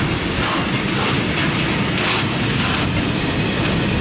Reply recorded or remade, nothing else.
recorded